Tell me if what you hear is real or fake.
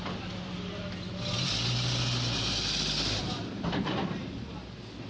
real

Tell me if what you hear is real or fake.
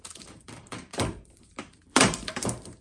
fake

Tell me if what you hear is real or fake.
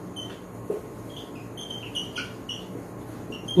real